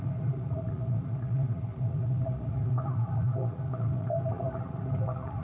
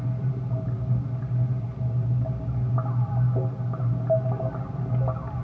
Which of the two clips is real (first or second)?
second